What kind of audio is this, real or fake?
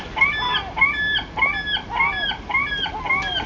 real